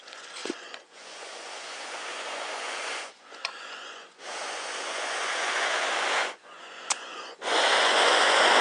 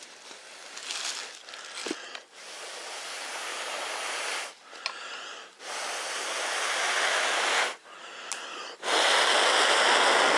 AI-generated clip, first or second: first